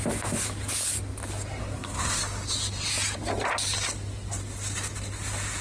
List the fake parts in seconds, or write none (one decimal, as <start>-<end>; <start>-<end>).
1.6-2.2